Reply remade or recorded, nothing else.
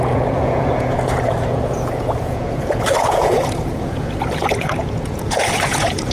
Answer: remade